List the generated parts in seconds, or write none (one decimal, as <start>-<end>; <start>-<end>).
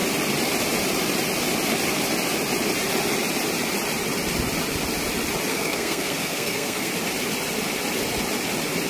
5.5-6.9